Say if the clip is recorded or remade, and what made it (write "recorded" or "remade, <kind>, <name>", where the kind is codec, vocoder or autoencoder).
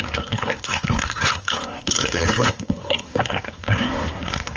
remade, codec, SNAC